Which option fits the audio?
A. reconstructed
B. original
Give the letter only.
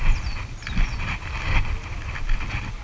B